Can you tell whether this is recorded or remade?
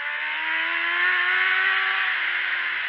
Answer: recorded